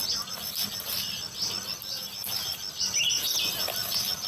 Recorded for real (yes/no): yes